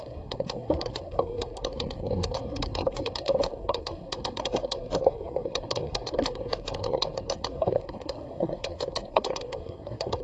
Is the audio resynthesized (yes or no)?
yes